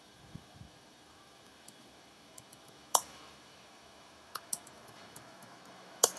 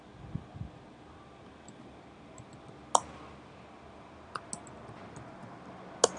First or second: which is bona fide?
second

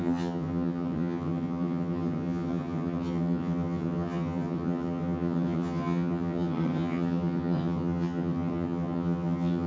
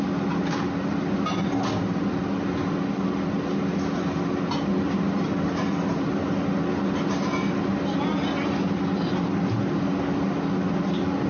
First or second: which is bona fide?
second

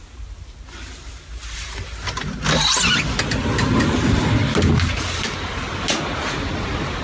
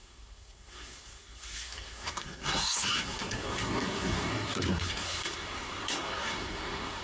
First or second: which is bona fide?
first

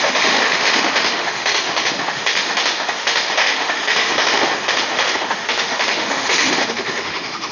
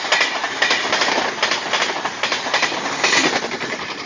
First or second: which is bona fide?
second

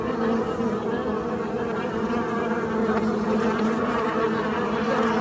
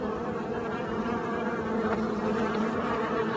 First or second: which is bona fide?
first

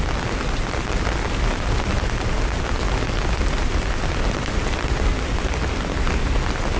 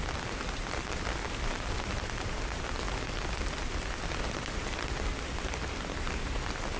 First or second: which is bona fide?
first